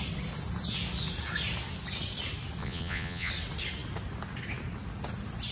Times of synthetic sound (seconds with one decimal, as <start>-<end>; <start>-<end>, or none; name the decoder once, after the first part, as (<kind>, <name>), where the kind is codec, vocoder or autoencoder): 2.6-3.3 (vocoder, Vocos)